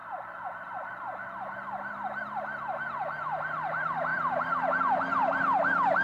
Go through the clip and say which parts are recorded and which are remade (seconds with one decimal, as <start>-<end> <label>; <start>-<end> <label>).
0.0-0.5 recorded; 0.5-1.2 remade; 1.2-1.9 recorded; 1.9-6.0 remade